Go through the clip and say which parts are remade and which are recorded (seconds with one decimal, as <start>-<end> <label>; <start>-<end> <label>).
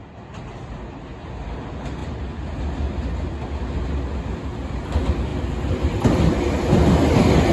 0.0-5.3 recorded; 5.3-6.7 remade; 6.7-7.5 recorded